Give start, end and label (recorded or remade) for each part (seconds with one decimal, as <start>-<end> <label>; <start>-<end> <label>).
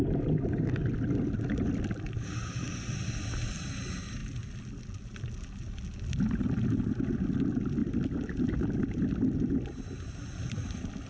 0.0-11.1 recorded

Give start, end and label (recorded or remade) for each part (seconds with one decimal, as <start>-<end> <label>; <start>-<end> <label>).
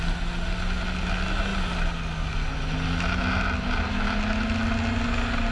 0.0-5.5 recorded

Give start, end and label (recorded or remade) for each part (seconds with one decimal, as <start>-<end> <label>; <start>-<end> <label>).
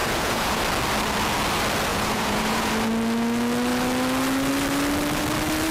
0.0-0.6 remade; 0.6-1.9 recorded; 1.9-2.7 remade; 2.7-5.7 recorded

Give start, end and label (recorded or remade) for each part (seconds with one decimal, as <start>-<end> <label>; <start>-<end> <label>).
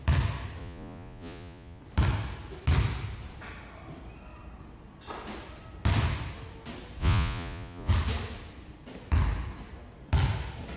0.0-0.6 recorded; 0.6-1.8 remade; 1.8-7.0 recorded; 7.0-7.9 remade; 7.9-10.8 recorded